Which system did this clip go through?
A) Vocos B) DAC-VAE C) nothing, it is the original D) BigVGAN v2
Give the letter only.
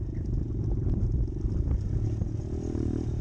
C